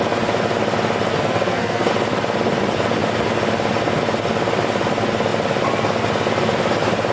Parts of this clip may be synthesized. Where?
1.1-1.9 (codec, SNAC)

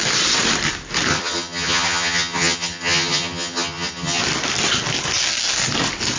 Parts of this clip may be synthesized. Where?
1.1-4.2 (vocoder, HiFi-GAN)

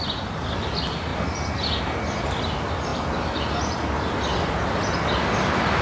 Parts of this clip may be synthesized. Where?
none